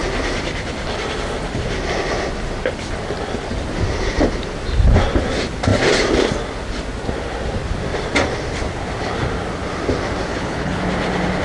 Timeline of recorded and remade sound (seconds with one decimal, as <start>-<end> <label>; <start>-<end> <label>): 0.0-10.3 recorded; 10.3-10.8 remade; 10.8-11.4 recorded